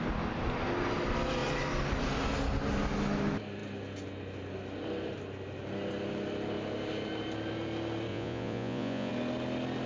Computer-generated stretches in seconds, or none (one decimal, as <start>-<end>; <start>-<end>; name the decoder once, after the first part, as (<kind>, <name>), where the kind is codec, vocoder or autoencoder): 8.1-9.1 (vocoder, Vocos)